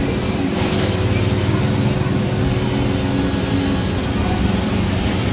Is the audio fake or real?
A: real